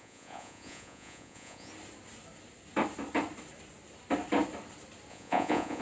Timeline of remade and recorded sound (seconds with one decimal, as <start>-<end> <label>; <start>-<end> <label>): 0.0-1.7 remade; 1.7-5.1 recorded; 5.1-5.8 remade